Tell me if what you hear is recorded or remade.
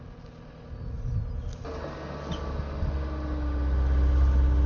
recorded